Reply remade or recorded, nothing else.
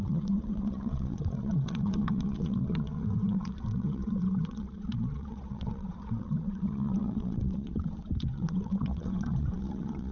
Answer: remade